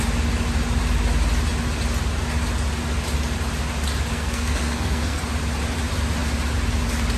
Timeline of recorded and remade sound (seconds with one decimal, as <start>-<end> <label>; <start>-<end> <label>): 0.0-4.1 recorded; 4.1-5.2 remade; 5.2-7.2 recorded